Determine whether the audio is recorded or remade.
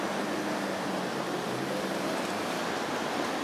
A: recorded